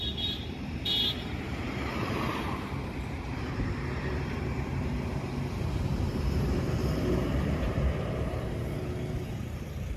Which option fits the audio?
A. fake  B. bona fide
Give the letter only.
A